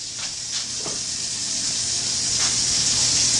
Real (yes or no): yes